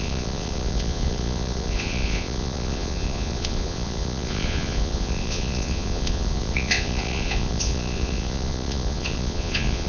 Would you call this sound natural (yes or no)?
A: no